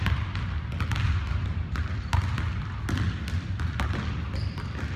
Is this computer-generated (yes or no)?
no